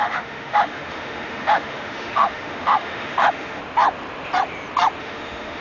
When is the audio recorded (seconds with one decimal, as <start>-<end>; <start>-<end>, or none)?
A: 3.6-5.0